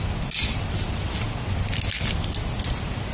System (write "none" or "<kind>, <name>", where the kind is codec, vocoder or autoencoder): none